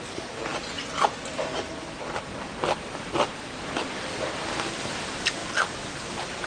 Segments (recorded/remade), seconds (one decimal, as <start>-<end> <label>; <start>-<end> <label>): 0.0-6.5 recorded